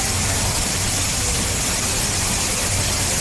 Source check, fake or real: real